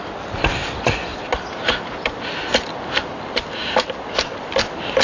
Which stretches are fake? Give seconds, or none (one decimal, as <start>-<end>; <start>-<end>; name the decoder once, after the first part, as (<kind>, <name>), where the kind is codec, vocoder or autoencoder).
none